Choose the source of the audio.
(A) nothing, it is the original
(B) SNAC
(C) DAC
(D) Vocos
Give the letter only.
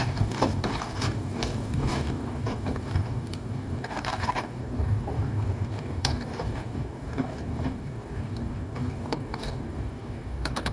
C